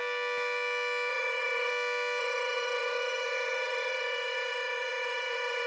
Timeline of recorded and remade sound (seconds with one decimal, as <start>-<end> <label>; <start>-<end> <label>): 0.0-1.1 recorded; 1.1-1.7 remade; 1.7-2.2 recorded; 2.2-5.7 remade